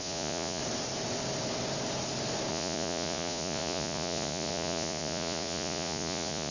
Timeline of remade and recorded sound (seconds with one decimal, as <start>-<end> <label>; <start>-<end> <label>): 0.0-0.6 remade; 0.6-2.5 recorded; 2.5-6.5 remade